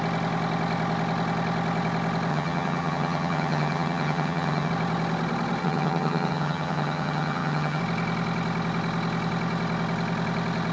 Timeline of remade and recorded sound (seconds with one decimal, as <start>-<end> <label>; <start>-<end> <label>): 0.0-2.3 recorded; 2.3-4.7 remade; 4.7-5.6 recorded; 5.6-7.8 remade; 7.8-10.7 recorded